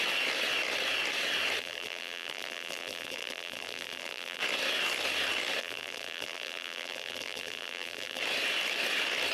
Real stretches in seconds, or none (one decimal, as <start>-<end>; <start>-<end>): 0.0-1.6; 4.4-5.6; 8.2-9.3